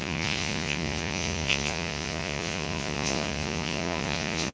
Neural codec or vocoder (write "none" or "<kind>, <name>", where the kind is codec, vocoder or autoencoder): vocoder, Vocos